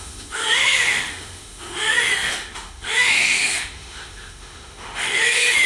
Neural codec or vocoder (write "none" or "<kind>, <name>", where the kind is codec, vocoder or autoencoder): autoencoder, DAC-VAE